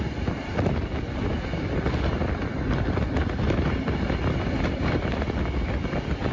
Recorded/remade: recorded